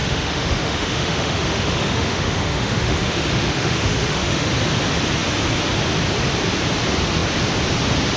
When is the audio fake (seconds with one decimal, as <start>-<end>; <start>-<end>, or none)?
0.0-4.5